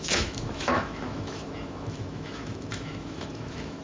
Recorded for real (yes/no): no